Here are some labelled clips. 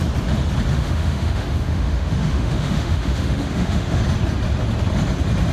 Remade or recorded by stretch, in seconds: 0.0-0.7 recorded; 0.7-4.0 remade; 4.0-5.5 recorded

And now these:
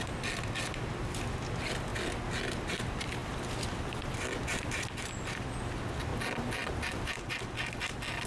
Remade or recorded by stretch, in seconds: 0.0-8.3 recorded

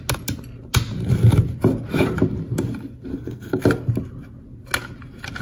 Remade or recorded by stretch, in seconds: 0.0-3.1 recorded; 3.1-3.6 remade; 3.6-5.4 recorded

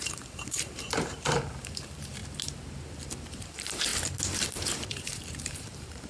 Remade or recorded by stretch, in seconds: 0.0-2.2 remade; 2.2-3.3 recorded; 3.3-3.9 remade; 3.9-4.9 recorded; 4.9-6.1 remade

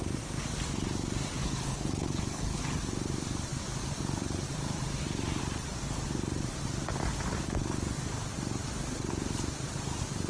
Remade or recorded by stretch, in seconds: 0.0-1.4 recorded; 1.4-2.6 remade; 2.6-10.3 recorded

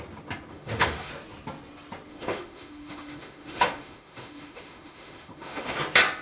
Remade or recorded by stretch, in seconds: 0.0-0.5 recorded; 0.5-1.1 remade; 1.1-2.1 recorded; 2.1-5.8 remade; 5.8-6.2 recorded